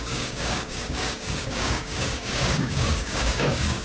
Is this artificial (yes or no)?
yes